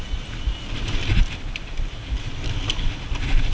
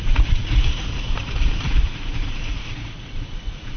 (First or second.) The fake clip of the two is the second